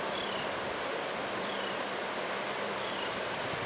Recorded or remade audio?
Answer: remade